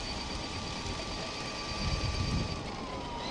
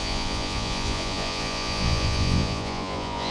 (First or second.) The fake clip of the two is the second